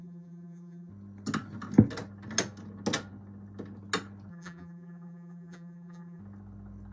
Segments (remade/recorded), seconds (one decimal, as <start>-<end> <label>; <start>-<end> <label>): 0.0-0.9 remade; 0.9-4.3 recorded; 4.3-6.2 remade; 6.2-6.9 recorded